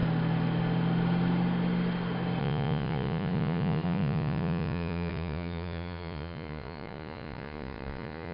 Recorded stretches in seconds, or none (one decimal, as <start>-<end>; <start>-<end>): 0.0-2.4